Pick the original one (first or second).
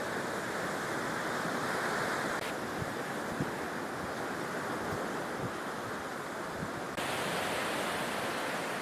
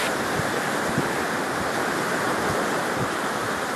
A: first